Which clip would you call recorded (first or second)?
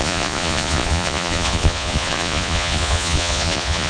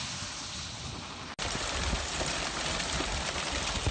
second